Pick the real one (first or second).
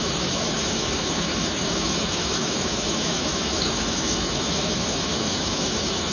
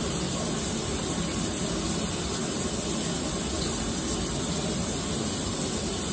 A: second